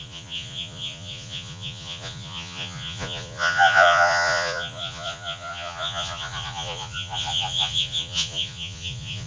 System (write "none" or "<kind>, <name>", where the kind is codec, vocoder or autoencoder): vocoder, Vocos